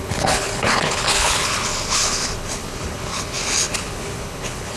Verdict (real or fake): fake